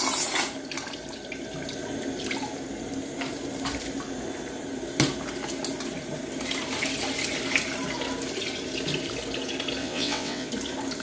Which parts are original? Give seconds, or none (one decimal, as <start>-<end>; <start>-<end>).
0.0-9.8; 10.5-11.0